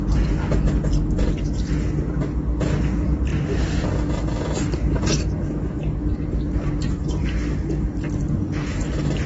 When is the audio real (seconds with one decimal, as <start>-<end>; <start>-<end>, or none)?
0.0-9.3